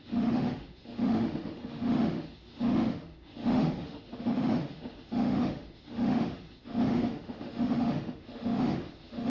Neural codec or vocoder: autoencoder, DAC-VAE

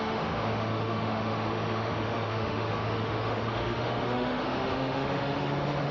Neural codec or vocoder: autoencoder, DAC-VAE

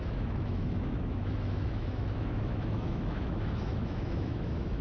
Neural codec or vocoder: autoencoder, DAC-VAE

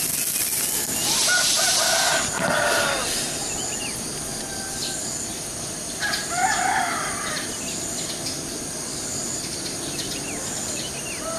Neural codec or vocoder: none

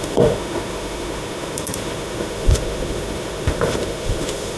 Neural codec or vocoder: autoencoder, DAC-VAE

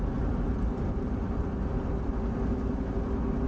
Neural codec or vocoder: none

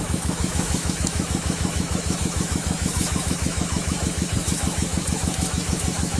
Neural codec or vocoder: autoencoder, DAC-VAE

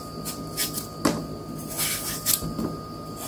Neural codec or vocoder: none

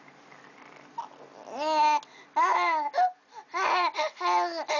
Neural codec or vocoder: none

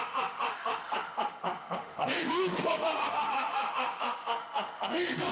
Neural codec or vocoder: autoencoder, DAC-VAE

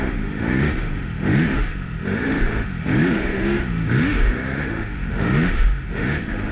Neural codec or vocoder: autoencoder, DAC-VAE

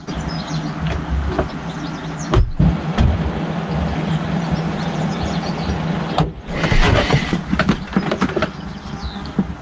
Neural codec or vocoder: none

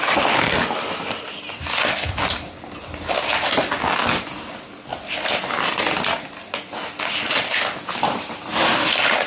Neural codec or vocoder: none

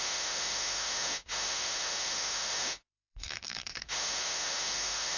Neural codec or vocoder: autoencoder, DAC-VAE